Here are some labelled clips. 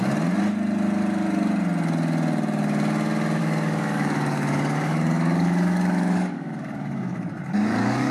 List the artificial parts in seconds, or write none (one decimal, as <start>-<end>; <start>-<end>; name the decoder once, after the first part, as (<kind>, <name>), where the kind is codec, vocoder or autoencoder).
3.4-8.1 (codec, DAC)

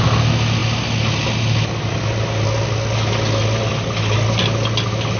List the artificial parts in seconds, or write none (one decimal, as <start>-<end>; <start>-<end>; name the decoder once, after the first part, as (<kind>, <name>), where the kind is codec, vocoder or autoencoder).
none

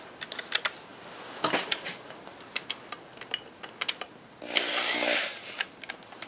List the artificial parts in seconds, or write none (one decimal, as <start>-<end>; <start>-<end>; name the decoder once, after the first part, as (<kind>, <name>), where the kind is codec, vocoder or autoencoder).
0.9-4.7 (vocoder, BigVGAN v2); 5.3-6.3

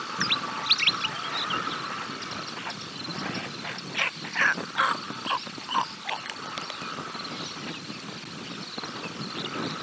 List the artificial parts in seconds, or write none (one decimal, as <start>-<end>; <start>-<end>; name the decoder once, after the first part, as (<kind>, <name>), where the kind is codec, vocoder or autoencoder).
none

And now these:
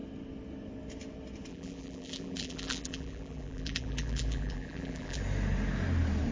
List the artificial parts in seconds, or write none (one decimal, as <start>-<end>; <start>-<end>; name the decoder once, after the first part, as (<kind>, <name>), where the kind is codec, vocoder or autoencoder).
1.5-5.2 (vocoder, BigVGAN v2)

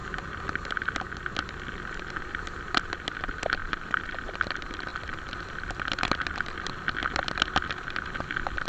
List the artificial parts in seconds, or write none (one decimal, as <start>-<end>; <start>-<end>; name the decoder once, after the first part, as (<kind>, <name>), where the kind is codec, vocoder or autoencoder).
3.6-4.3 (vocoder, BigVGAN v2)

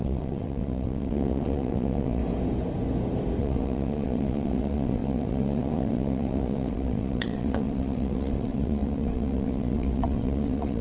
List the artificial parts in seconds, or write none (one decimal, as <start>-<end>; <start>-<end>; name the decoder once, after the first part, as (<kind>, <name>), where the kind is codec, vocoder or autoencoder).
0.0-2.2 (vocoder, WaveNeXt); 3.4-10.8